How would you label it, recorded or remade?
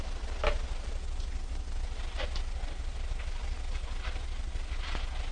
recorded